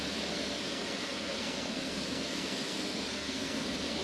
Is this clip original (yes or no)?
no